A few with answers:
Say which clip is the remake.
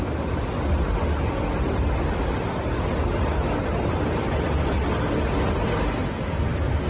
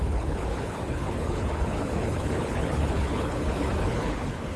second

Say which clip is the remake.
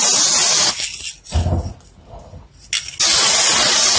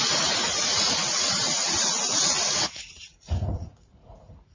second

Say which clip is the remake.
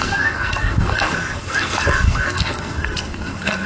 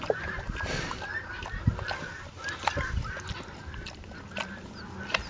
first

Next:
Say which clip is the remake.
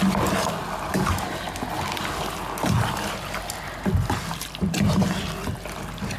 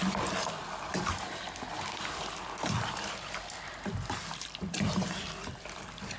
second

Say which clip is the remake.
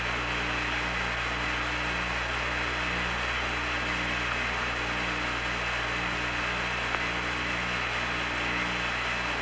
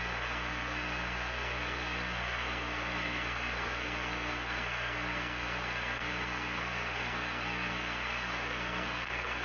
second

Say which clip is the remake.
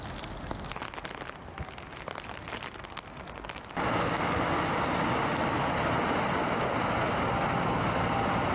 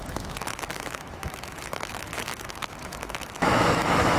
second